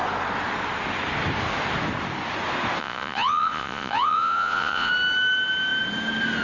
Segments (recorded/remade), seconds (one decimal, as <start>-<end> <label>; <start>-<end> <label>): 0.0-2.8 recorded; 2.8-4.9 remade; 4.9-6.4 recorded